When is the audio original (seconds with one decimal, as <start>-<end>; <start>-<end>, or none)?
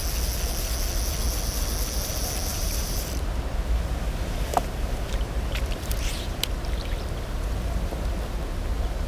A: 0.0-2.5; 3.4-4.5; 6.5-9.1